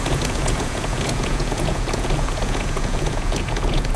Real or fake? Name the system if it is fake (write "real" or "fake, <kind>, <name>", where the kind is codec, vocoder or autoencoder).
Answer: fake, vocoder, Vocos